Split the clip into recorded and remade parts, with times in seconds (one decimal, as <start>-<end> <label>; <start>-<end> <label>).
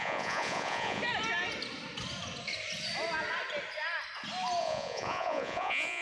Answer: 0.0-1.0 remade; 1.0-4.6 recorded; 4.6-6.0 remade